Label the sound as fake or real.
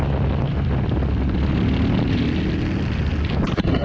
real